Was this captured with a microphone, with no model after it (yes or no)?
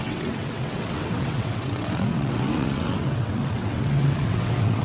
no